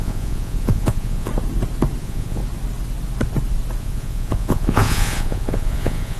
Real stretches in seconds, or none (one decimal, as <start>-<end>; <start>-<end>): 1.3-2.0; 2.4-3.8